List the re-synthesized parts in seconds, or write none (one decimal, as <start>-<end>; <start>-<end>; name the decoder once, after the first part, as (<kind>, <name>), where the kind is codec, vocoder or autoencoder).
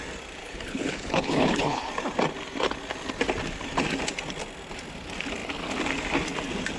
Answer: 0.4-1.9 (codec, HILCodec)